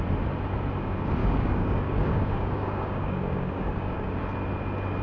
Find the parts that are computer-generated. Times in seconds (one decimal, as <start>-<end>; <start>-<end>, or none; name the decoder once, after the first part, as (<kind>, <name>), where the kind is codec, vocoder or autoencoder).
1.2-4.2 (codec, DAC)